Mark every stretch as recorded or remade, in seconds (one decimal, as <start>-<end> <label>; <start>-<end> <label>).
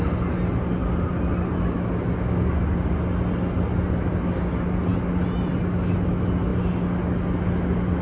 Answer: 0.0-8.0 recorded